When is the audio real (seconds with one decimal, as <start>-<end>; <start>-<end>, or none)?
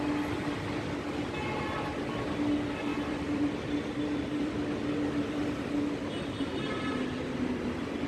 0.0-2.9; 4.6-8.1